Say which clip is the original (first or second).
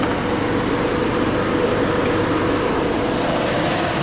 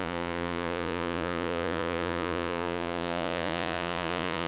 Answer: first